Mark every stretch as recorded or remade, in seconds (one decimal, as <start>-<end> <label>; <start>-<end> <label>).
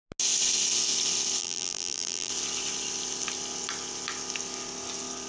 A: 0.0-1.4 recorded; 1.4-2.3 remade; 2.3-5.3 recorded